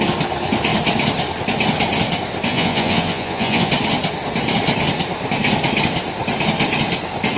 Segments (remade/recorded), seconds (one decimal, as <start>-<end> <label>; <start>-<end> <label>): 0.0-2.5 recorded; 2.5-3.7 remade; 3.7-7.4 recorded